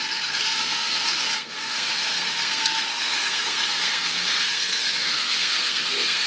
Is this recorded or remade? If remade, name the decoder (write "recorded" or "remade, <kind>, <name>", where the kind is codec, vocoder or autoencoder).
remade, codec, SNAC